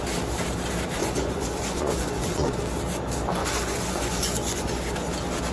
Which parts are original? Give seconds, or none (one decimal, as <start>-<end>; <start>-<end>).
0.0-1.0; 2.6-3.4; 4.8-5.5